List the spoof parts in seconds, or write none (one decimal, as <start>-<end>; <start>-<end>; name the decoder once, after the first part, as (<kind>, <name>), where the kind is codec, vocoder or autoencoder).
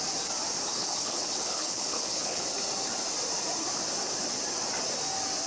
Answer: 0.7-2.5 (codec, HILCodec)